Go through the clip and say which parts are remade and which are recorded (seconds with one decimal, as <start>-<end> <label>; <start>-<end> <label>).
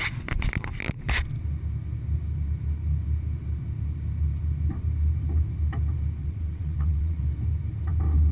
0.0-6.2 recorded; 6.2-7.2 remade; 7.2-8.3 recorded